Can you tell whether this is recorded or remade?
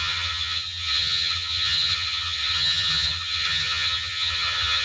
remade